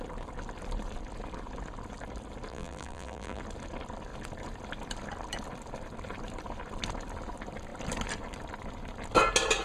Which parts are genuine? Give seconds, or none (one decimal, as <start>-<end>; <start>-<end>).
0.0-2.5; 3.4-9.6